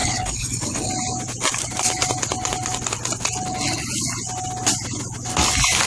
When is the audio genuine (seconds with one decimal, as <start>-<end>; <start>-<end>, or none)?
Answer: 0.9-5.9